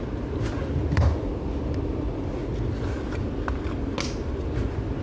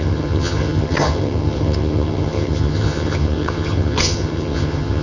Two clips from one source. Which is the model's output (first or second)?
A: second